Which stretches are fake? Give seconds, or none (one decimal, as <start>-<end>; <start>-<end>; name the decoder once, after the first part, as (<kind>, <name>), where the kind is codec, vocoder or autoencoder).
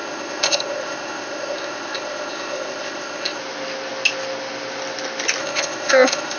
0.0-3.4 (codec, ZipCodec); 5.4-6.4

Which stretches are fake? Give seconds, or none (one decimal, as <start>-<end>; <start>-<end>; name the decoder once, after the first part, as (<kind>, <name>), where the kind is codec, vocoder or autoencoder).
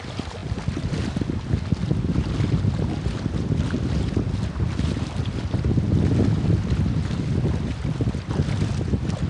none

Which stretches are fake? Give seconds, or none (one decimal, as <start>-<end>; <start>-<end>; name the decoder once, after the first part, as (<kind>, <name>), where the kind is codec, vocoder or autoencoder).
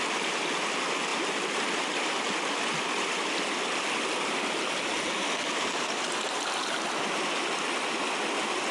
none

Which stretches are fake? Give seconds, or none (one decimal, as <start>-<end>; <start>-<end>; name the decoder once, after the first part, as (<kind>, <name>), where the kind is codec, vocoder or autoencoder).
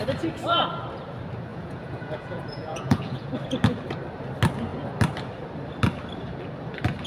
1.5-3.3 (vocoder, Vocos)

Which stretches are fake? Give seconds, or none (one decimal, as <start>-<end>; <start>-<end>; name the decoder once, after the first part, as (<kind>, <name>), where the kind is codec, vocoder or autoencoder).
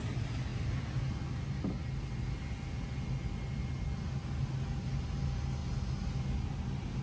none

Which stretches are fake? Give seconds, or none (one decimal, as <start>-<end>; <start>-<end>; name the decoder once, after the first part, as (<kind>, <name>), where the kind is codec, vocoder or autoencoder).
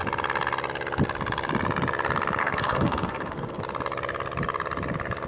2.4-3.6 (codec, SNAC)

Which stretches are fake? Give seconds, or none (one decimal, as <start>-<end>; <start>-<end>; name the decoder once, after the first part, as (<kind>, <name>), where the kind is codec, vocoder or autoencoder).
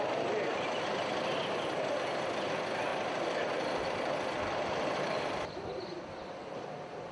2.9-5.8 (vocoder, BigVGAN v2)